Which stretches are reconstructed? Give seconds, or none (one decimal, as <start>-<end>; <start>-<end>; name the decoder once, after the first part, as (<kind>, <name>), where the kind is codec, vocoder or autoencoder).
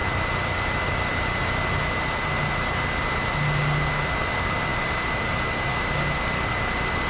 none